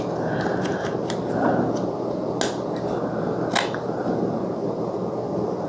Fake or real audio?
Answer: real